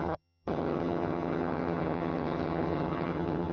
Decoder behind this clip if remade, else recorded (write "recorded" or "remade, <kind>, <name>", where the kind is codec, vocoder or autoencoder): remade, vocoder, HiFi-GAN